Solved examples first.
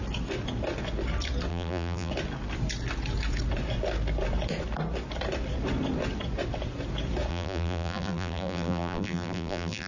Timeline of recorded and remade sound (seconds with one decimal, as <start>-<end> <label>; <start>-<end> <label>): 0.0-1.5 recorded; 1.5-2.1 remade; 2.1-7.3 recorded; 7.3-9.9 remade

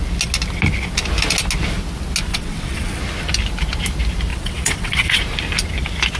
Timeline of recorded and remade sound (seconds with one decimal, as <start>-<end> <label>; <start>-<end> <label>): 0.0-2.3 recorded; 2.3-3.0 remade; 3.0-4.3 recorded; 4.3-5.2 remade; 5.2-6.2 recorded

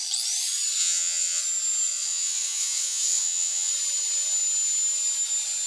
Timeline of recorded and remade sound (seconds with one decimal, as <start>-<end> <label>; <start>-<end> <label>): 0.0-0.8 recorded; 0.8-1.4 remade; 1.4-1.9 recorded; 1.9-3.7 remade; 3.7-5.7 recorded

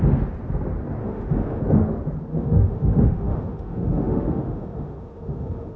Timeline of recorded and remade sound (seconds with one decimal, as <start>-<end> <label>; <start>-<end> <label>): 0.0-1.0 recorded; 1.0-1.6 remade; 1.6-2.3 recorded; 2.3-5.8 remade

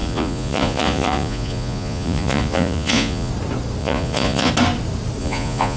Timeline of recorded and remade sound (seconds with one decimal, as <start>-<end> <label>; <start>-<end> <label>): 0.0-3.3 remade; 3.3-3.8 recorded; 3.8-4.5 remade; 4.5-5.2 recorded; 5.2-5.8 remade

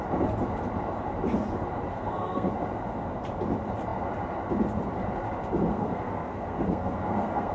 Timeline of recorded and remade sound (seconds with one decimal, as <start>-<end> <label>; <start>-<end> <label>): 0.0-1.9 recorded; 1.9-2.5 remade; 2.5-5.7 recorded; 5.7-7.5 remade

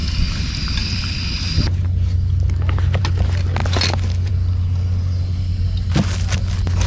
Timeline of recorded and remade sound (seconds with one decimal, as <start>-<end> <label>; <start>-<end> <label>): 0.0-6.9 recorded

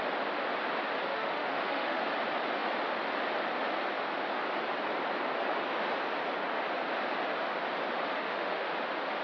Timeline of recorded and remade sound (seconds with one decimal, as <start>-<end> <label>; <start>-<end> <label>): 0.0-1.1 recorded; 1.1-2.0 remade; 2.0-8.2 recorded; 8.2-8.7 remade; 8.7-9.2 recorded